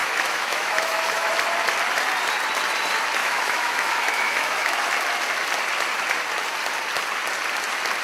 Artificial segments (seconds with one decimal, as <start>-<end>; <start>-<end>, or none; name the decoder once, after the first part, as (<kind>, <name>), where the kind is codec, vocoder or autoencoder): 0.0-1.3 (autoencoder, DAC-VAE); 3.2-4.8